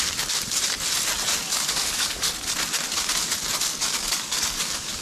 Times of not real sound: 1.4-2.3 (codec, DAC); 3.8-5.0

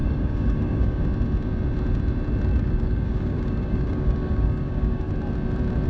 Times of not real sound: 0.0-1.0 (codec, DAC); 2.5-5.1

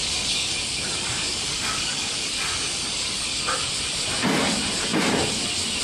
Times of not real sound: 0.0-3.5 (codec, DAC)

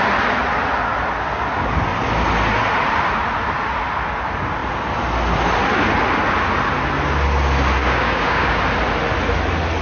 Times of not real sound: 7.8-8.6 (codec, DAC)

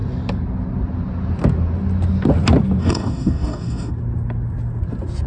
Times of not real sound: 2.8-3.9 (codec, DAC)

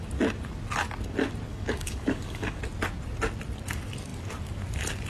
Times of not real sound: 1.5-2.6 (codec, DAC)

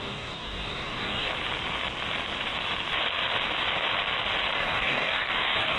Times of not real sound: 0.0-1.3 (codec, DAC); 4.6-5.8

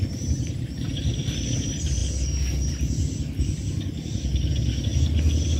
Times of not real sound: none